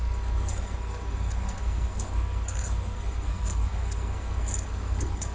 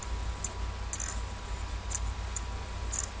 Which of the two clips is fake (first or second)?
first